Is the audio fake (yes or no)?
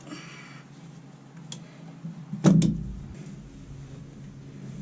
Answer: no